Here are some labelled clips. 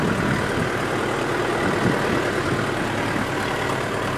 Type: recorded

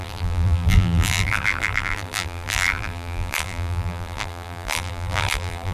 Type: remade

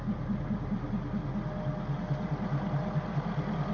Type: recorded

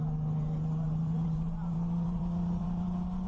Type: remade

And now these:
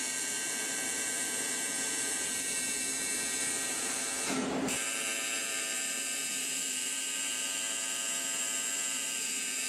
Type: remade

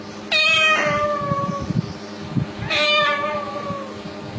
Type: recorded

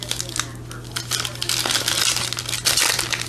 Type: recorded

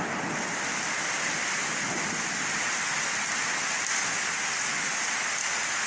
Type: recorded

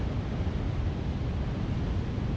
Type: recorded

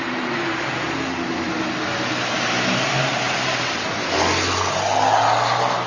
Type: recorded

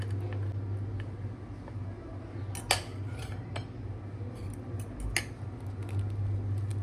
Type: recorded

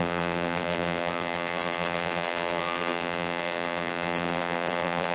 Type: remade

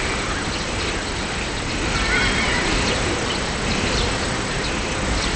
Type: remade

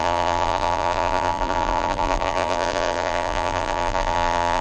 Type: remade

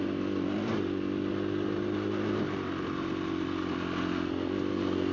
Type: recorded